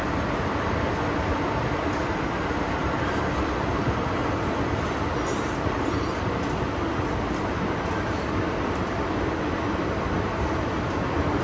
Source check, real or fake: real